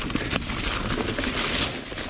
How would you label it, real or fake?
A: real